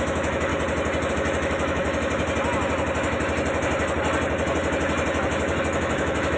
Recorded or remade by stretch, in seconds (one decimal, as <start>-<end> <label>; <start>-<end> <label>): 0.0-0.5 remade; 0.5-1.1 recorded; 1.1-1.8 remade; 1.8-5.6 recorded; 5.6-6.4 remade